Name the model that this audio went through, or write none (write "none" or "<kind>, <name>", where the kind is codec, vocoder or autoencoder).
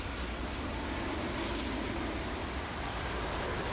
none